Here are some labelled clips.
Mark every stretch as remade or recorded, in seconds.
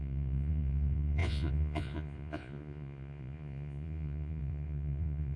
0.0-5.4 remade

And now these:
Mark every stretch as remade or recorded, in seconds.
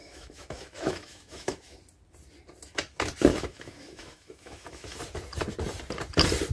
0.0-1.8 remade; 1.8-3.3 recorded; 3.3-5.0 remade; 5.0-6.5 recorded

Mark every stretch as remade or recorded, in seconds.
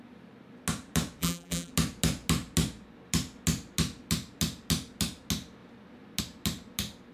0.0-1.2 recorded; 1.2-1.7 remade; 1.7-7.1 recorded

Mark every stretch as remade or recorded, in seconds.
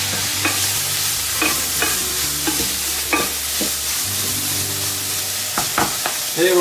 0.0-6.6 recorded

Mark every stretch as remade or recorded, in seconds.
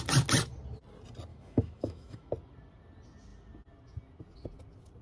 0.0-1.3 recorded; 1.3-2.3 remade; 2.3-5.0 recorded